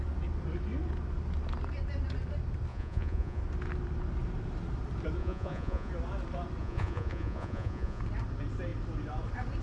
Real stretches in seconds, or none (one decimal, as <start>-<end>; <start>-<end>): 0.0-2.7; 3.4-5.2; 5.9-6.6; 8.0-9.6